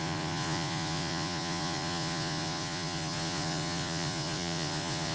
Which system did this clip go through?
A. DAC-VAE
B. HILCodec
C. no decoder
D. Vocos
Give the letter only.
D